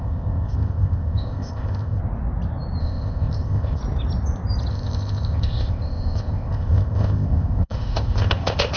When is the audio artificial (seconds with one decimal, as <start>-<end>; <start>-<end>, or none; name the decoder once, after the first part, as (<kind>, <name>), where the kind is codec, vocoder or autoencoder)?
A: 0.0-2.0 (codec, ZipCodec); 2.8-3.8; 4.7-8.8